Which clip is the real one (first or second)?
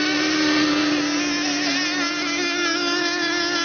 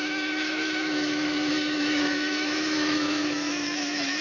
first